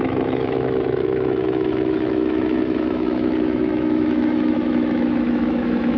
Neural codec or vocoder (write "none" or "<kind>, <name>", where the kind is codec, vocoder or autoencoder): autoencoder, DAC-VAE